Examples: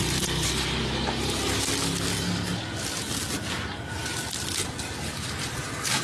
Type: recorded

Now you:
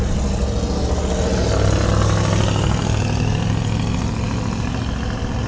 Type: recorded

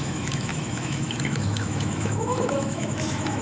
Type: remade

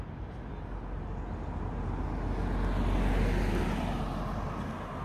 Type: recorded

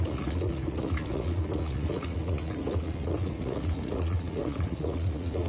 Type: remade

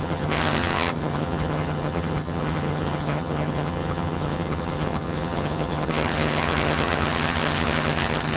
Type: remade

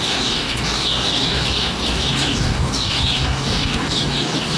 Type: remade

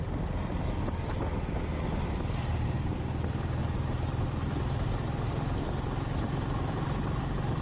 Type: recorded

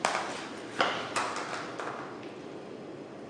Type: recorded